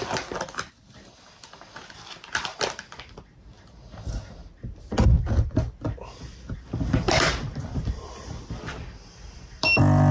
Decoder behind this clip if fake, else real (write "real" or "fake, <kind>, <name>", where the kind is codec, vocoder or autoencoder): real